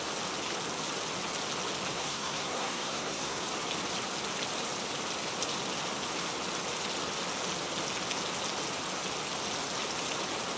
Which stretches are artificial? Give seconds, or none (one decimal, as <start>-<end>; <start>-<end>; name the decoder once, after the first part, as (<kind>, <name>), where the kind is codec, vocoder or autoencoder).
1.9-3.4 (codec, SNAC)